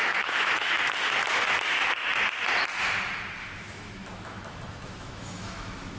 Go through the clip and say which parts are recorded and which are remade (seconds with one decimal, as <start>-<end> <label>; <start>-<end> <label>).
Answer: 0.0-0.8 remade; 0.8-3.4 recorded; 3.4-6.0 remade

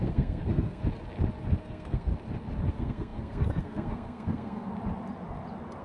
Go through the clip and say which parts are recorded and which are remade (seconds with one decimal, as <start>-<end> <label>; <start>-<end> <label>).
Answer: 0.0-0.8 remade; 0.8-1.6 recorded; 1.6-2.1 remade; 2.1-2.7 recorded; 2.7-4.7 remade; 4.7-5.8 recorded

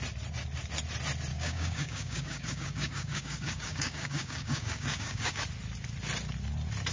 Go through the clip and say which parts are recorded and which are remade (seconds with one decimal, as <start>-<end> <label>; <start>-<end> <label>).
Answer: 0.0-1.3 recorded; 1.3-5.4 remade; 5.4-6.9 recorded

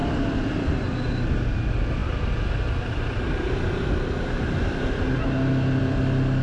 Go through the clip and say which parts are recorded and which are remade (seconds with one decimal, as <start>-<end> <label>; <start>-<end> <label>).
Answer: 0.0-1.6 remade; 1.6-6.4 recorded

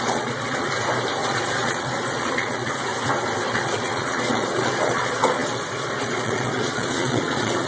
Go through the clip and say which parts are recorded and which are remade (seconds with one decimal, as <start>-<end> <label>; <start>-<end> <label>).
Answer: 0.0-0.7 remade; 0.7-1.2 recorded; 1.2-2.9 remade; 2.9-3.5 recorded; 3.5-7.7 remade

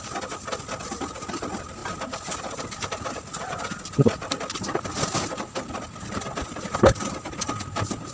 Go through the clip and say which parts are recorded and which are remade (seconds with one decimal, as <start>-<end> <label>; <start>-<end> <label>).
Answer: 0.0-8.1 recorded

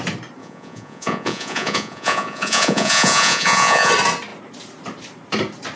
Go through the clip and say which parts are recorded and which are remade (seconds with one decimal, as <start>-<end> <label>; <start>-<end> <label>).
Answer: 0.0-0.4 recorded; 0.4-3.9 remade; 3.9-5.8 recorded